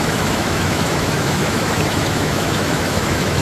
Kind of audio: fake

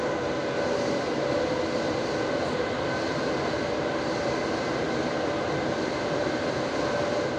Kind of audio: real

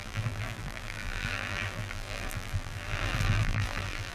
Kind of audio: fake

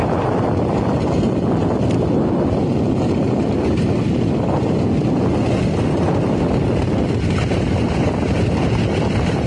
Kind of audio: real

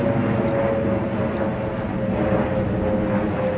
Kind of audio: real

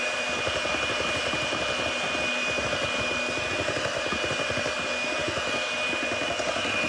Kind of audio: real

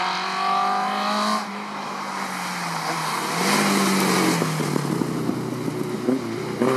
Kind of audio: real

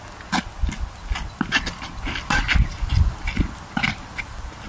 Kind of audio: real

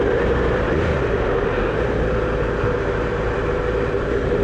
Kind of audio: real